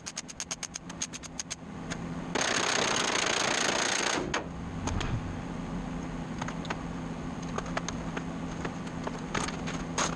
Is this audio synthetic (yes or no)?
no